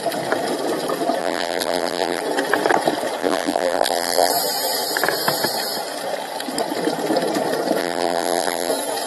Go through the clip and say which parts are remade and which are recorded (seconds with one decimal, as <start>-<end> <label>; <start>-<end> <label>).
0.0-1.2 recorded; 1.2-2.2 remade; 2.2-3.2 recorded; 3.2-4.3 remade; 4.3-7.8 recorded; 7.8-8.7 remade; 8.7-9.1 recorded

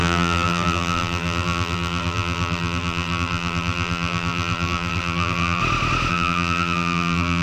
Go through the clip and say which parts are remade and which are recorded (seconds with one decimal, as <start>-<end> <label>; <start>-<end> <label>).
0.0-5.6 remade; 5.6-6.1 recorded; 6.1-7.4 remade

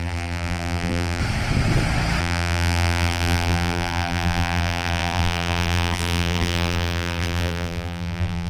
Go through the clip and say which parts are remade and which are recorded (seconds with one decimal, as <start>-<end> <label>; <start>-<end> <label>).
0.0-1.2 remade; 1.2-2.2 recorded; 2.2-8.5 remade